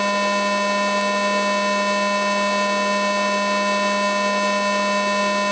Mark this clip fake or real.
real